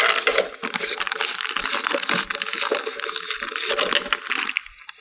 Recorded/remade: remade